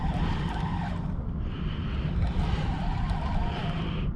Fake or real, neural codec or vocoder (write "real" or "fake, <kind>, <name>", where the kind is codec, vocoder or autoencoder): real